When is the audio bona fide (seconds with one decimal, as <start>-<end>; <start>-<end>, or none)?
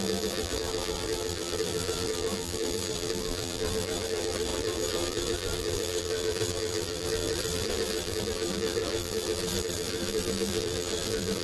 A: none